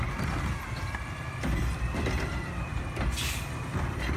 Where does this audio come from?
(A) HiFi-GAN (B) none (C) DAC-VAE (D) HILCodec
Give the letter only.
B